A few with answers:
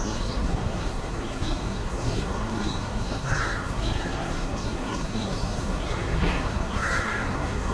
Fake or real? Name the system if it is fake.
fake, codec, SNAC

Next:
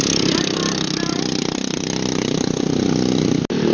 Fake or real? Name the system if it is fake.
real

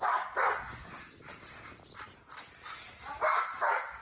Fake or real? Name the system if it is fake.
real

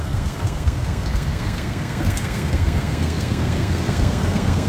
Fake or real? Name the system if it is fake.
fake, codec, SNAC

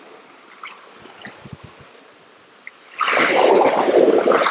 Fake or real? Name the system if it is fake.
real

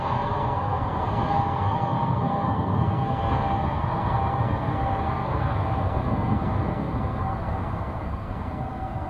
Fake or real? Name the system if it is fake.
fake, codec, SNAC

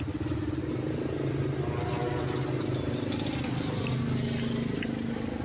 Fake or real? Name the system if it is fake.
real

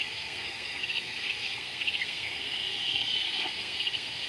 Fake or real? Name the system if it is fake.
fake, codec, SNAC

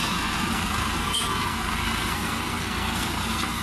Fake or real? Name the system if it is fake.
fake, codec, SNAC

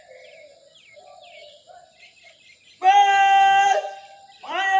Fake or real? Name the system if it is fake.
real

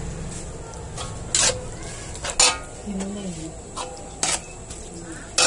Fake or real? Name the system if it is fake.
real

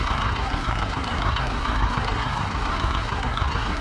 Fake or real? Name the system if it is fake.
fake, codec, SNAC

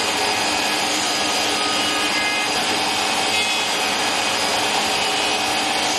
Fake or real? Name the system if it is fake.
real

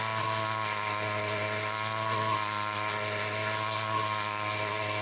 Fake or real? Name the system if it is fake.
fake, codec, SNAC